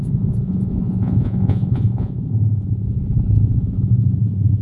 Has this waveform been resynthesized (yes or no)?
yes